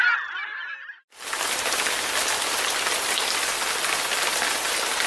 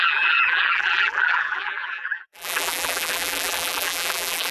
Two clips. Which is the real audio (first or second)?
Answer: first